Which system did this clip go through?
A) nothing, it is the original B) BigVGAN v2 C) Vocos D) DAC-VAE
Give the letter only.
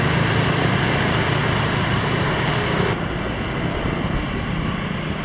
A